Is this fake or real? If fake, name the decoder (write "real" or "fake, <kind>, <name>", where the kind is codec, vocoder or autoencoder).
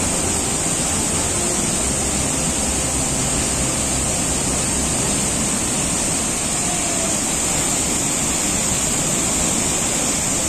real